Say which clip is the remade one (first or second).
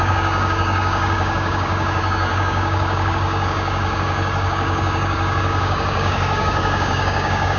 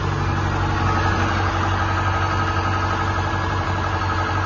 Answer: first